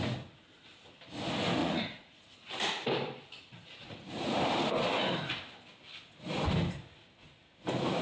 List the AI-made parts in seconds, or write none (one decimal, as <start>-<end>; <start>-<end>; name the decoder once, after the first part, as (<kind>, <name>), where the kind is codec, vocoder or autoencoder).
1.6-2.2 (vocoder, Vocos); 3.8-4.4

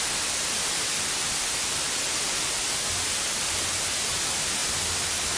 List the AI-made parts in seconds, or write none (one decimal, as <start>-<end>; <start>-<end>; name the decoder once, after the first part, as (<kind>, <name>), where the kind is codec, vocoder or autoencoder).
none

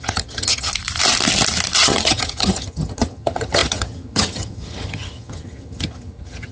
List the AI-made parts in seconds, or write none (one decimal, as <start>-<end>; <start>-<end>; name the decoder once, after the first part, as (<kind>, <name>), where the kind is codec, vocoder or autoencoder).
0.0-0.7 (vocoder, HiFi-GAN); 1.8-6.5

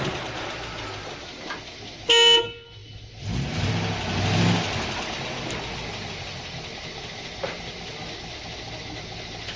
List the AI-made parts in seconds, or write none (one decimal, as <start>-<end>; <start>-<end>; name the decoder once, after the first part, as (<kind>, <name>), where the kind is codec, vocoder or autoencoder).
none